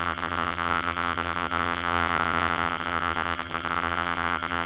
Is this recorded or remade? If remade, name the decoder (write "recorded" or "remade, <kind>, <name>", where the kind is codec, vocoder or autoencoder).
remade, vocoder, HiFi-GAN